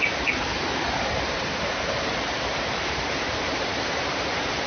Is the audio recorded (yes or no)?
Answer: no